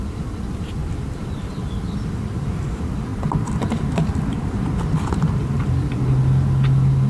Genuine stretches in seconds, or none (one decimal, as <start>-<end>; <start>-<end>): 0.0-3.1; 5.9-7.1